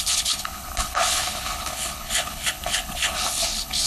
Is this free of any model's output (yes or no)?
no